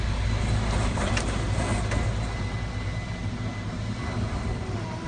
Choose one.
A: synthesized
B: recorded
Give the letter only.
B